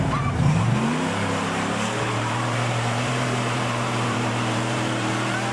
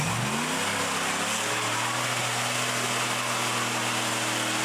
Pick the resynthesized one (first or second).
first